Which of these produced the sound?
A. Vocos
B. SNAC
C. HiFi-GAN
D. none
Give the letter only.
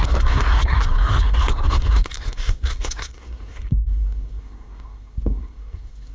B